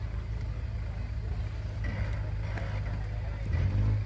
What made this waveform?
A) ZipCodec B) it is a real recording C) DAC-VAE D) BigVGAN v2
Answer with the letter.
B